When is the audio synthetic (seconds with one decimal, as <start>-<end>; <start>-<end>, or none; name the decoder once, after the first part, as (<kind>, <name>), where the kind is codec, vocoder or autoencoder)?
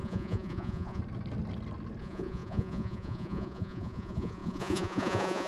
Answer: 0.0-1.0 (vocoder, Vocos); 2.0-5.5